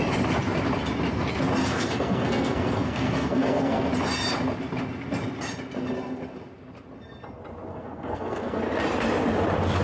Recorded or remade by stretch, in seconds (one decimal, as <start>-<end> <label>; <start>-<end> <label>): 0.0-1.6 recorded; 1.6-3.9 remade; 3.9-7.7 recorded; 7.7-8.6 remade; 8.6-9.8 recorded